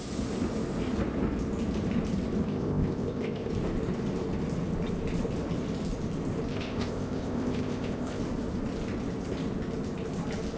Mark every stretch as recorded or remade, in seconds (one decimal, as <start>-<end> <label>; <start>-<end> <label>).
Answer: 0.0-2.4 recorded; 2.4-3.5 remade; 3.5-6.5 recorded; 6.5-8.2 remade; 8.2-10.6 recorded